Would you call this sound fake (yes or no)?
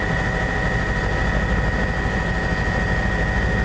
no